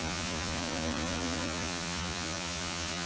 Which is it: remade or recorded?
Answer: remade